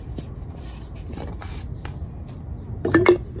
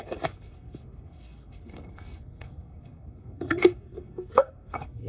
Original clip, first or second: first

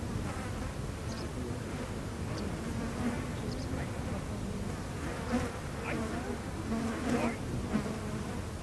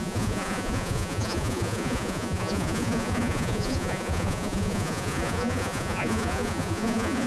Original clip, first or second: first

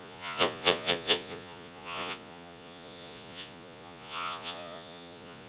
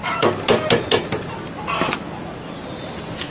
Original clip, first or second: second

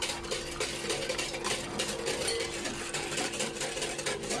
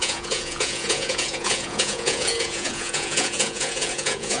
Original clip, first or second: first